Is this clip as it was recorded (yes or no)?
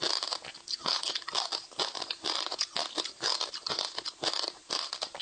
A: yes